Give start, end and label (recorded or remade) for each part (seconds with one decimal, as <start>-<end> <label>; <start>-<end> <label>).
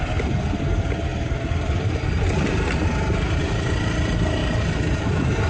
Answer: 0.0-5.5 recorded